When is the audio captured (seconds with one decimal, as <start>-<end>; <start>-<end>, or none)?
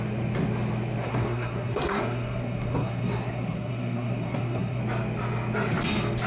0.0-1.0; 4.8-6.3